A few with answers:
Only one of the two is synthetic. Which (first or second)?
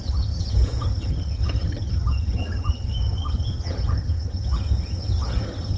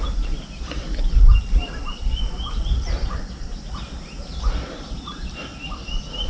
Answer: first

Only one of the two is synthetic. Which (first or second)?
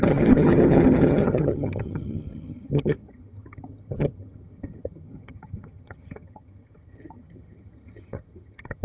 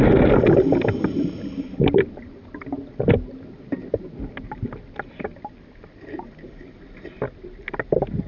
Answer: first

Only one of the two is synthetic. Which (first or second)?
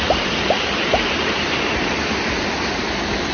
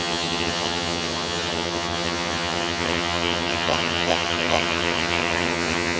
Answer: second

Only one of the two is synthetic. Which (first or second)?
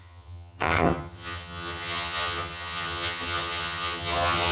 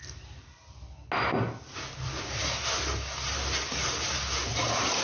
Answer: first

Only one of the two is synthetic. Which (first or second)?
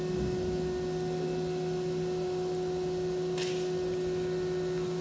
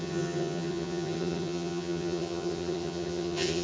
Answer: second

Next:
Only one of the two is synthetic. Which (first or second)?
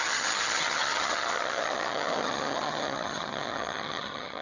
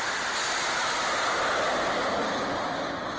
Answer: first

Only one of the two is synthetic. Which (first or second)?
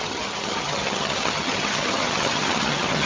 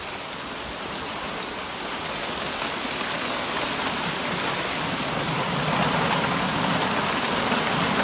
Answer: first